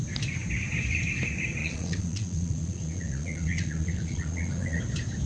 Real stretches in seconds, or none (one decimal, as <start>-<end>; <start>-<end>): 0.0-1.6; 4.8-5.3